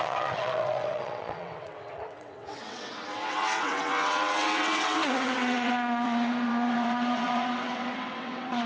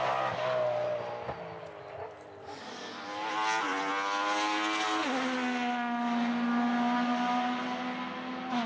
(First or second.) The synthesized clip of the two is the first